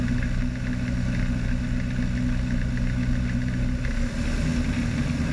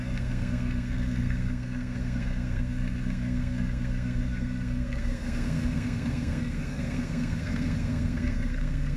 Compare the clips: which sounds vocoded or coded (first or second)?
second